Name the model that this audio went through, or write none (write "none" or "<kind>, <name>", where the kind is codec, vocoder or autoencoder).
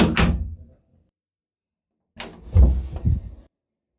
none